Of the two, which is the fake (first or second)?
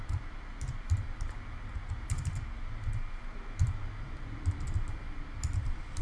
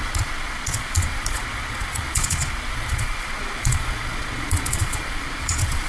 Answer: second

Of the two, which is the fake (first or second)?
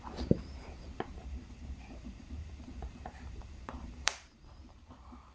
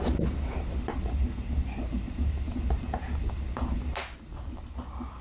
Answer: first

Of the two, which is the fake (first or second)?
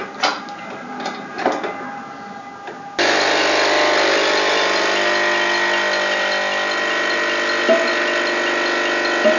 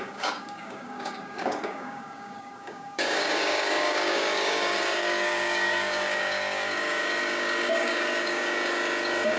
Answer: second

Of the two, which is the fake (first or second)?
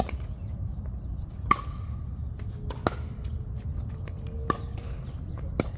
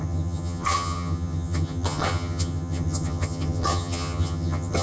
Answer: second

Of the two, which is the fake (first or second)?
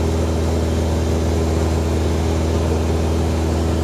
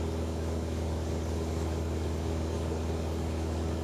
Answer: second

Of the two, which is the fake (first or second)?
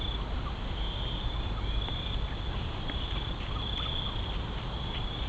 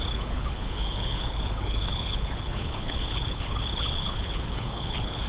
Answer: second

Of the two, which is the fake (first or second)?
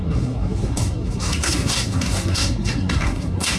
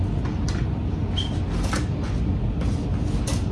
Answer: first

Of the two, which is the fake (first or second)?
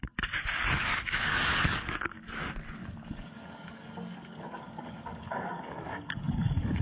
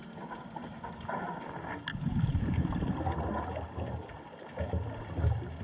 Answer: first